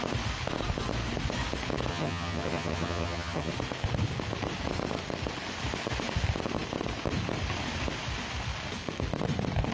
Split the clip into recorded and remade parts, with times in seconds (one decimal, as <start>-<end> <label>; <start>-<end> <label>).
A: 0.0-1.9 recorded; 1.9-3.5 remade; 3.5-9.7 recorded